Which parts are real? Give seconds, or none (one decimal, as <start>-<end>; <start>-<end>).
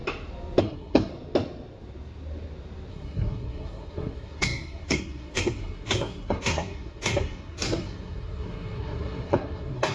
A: 0.0-0.6; 1.1-2.9